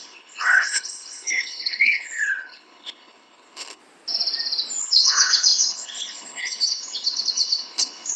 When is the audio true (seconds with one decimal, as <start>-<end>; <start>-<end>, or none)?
3.8-4.8